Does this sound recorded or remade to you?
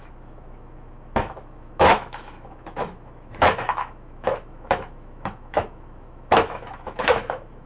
remade